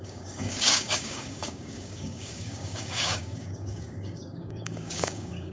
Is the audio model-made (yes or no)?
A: yes